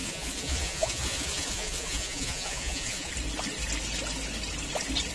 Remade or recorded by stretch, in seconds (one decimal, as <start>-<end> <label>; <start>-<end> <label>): 0.0-3.1 remade; 3.1-5.1 recorded